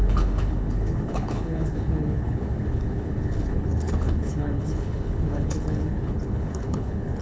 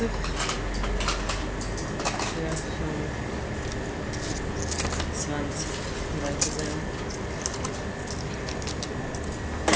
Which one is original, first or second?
second